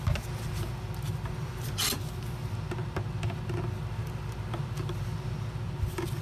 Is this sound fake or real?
real